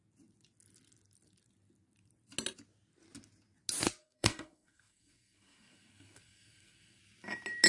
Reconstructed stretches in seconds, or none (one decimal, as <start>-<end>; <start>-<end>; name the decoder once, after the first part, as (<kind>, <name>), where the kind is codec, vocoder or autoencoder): 4.0-7.0 (codec, SNAC)